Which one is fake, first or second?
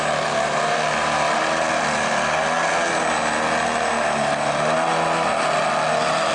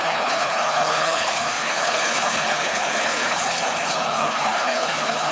second